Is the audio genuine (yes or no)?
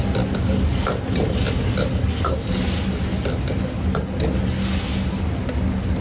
yes